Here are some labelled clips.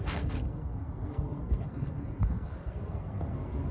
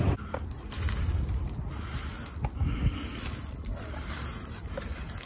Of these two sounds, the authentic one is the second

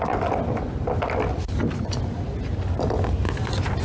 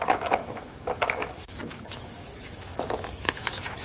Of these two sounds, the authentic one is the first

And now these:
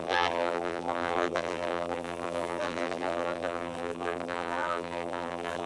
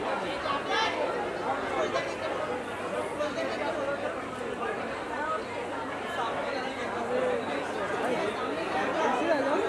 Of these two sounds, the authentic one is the second